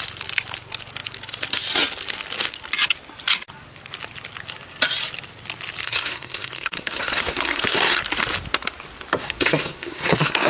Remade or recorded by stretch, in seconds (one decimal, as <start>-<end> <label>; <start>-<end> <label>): 0.0-5.8 recorded; 5.8-8.0 remade; 8.0-9.2 recorded; 9.2-10.5 remade